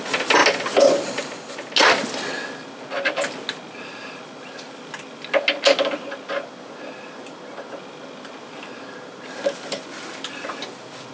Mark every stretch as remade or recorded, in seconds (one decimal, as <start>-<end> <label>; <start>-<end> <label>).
0.0-11.1 recorded